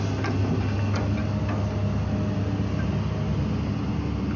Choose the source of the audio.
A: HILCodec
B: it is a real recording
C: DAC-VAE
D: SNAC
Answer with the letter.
B